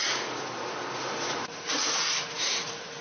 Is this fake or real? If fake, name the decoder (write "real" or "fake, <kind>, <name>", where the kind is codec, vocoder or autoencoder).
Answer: fake, vocoder, Vocos